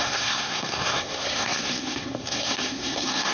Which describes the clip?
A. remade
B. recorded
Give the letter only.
A